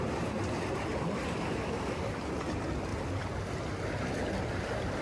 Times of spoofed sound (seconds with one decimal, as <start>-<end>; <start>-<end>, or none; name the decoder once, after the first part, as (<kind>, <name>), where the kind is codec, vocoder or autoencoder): 0.0-2.9 (vocoder, BigVGAN v2); 4.3-5.0